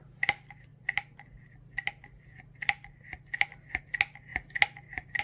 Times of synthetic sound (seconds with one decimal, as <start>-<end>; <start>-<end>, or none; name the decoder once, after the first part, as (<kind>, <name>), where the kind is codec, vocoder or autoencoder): none